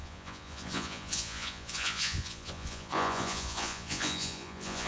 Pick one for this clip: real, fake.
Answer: fake